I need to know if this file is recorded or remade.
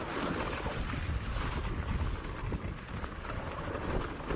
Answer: recorded